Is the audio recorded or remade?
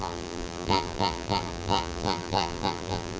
remade